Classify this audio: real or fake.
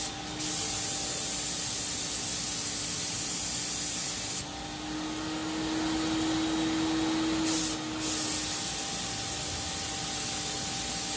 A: real